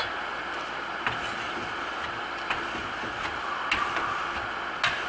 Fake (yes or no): no